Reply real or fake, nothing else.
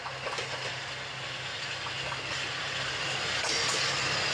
real